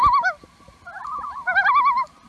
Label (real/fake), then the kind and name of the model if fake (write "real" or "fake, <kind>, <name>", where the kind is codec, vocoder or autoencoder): real